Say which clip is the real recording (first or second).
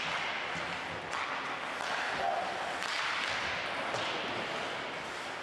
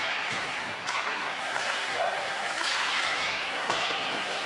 first